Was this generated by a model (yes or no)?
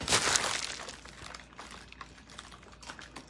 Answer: no